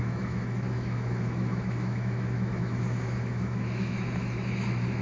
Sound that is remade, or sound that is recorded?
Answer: remade